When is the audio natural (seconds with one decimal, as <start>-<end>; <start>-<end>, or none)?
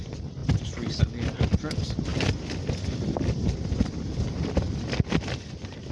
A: 0.0-5.9